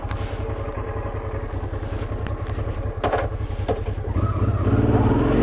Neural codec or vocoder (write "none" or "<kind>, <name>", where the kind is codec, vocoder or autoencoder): none